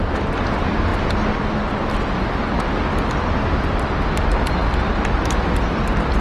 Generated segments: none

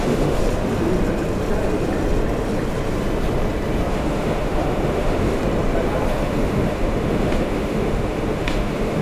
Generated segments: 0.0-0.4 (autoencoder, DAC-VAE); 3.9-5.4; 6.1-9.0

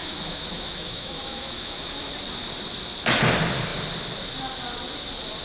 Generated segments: 0.0-2.1 (autoencoder, DAC-VAE)

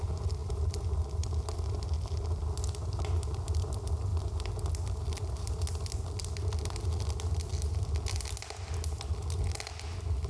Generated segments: none

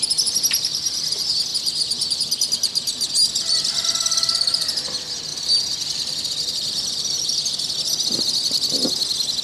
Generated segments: none